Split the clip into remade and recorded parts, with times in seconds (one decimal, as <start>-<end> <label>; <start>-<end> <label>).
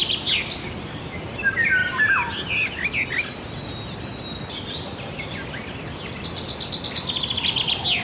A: 0.0-8.0 recorded